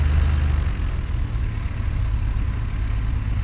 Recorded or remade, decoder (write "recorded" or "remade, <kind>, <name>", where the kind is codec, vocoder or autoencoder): recorded